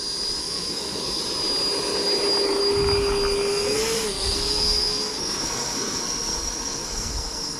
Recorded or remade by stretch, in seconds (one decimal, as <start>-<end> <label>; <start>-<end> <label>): 0.0-0.4 recorded; 0.4-1.2 remade; 1.2-3.5 recorded; 3.5-7.6 remade